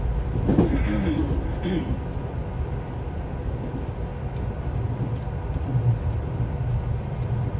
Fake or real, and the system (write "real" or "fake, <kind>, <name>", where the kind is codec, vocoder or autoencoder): real